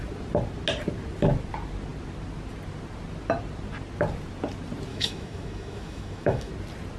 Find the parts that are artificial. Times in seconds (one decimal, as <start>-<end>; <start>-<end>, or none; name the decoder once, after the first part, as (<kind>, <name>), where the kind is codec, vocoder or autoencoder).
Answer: 4.9-6.5 (autoencoder, DAC-VAE)